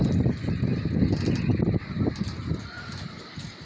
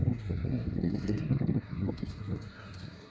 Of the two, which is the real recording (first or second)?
first